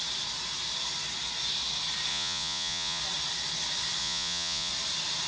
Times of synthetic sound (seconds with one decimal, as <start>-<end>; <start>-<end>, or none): 2.1-3.0; 4.0-4.7